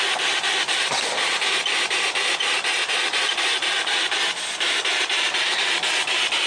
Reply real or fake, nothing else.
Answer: real